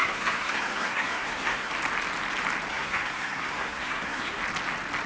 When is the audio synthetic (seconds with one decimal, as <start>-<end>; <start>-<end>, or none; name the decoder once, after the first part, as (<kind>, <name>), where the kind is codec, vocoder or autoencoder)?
0.0-1.7 (codec, SNAC); 2.7-4.4